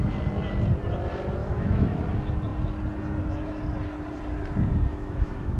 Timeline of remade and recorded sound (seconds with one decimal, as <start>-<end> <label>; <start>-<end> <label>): 0.0-1.4 recorded; 1.4-2.0 remade; 2.0-4.9 recorded; 4.9-5.6 remade

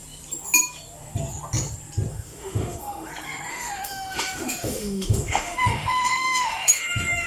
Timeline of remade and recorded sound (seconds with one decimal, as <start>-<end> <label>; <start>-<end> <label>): 0.0-2.1 recorded; 2.1-3.1 remade; 3.1-3.5 recorded; 3.5-7.3 remade

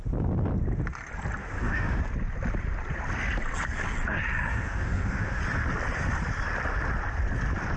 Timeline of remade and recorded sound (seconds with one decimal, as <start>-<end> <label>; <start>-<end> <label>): 0.0-1.4 recorded; 1.4-2.0 remade; 2.0-4.5 recorded; 4.5-5.4 remade; 5.4-7.8 recorded

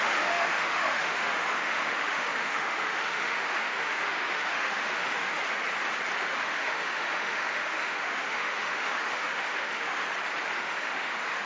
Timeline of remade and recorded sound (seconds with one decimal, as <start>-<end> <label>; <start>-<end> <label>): 0.0-5.4 remade; 5.4-6.2 recorded; 6.2-10.0 remade; 10.0-10.6 recorded; 10.6-11.5 remade

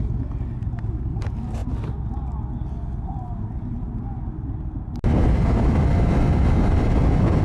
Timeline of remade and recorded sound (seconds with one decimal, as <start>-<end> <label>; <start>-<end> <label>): 0.0-7.4 recorded

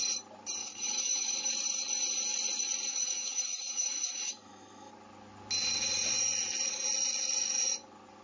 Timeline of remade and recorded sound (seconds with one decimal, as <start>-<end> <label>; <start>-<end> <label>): 0.0-0.6 recorded; 0.6-1.5 remade; 1.5-2.9 recorded; 2.9-4.9 remade; 4.9-8.2 recorded

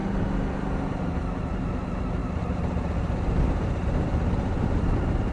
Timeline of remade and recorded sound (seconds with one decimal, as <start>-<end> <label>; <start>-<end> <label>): 0.0-5.3 recorded